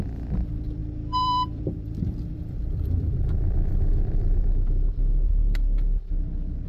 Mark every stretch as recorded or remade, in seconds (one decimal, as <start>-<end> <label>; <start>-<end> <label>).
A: 0.0-0.8 recorded; 0.8-4.5 remade; 4.5-6.7 recorded